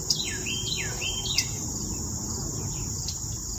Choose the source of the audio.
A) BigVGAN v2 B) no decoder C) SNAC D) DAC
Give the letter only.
B